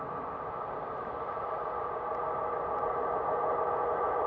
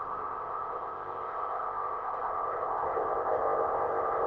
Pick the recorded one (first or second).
first